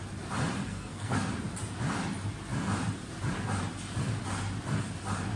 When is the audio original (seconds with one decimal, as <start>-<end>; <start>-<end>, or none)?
0.0-0.6; 1.3-5.4